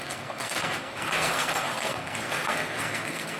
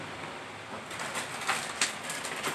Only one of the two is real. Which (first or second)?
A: second